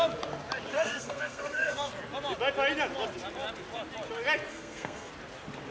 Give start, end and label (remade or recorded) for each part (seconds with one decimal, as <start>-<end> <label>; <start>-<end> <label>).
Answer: 0.0-0.7 recorded; 0.7-1.9 remade; 1.9-4.5 recorded; 4.5-5.1 remade; 5.1-5.7 recorded